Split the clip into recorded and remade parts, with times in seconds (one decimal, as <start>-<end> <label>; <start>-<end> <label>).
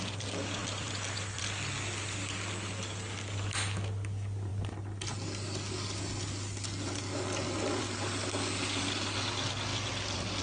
0.0-0.6 recorded; 0.6-1.4 remade; 1.4-9.7 recorded; 9.7-10.4 remade